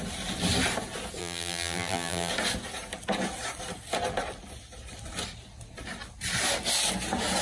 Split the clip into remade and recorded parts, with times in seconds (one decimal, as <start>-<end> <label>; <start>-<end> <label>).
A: 0.0-1.2 recorded; 1.2-2.3 remade; 2.3-7.4 recorded